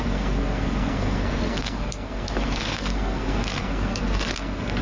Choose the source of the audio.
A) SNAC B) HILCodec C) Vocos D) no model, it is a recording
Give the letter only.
A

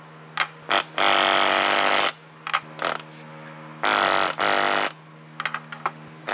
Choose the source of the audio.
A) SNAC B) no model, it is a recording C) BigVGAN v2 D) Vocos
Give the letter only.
B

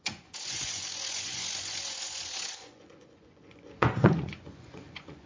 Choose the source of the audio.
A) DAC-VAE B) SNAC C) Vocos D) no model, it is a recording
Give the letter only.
C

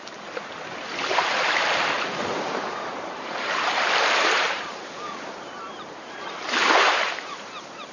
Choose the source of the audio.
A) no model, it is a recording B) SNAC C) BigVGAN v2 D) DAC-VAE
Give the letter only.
C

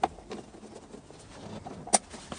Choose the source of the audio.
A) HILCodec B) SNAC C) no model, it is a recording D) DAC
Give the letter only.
C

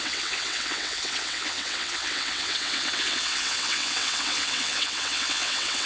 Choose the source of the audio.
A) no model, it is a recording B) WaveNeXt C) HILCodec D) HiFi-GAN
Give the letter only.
B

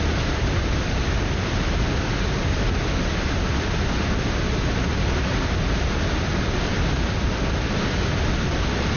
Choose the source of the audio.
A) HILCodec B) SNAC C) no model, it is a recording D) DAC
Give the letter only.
C